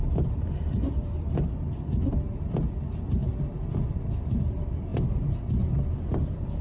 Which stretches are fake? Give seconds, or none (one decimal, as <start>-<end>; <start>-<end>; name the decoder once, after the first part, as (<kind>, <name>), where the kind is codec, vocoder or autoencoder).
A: none